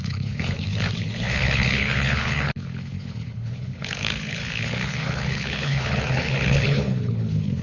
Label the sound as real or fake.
fake